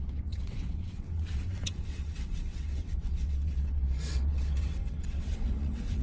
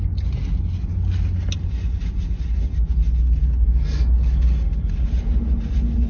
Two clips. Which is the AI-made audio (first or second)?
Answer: first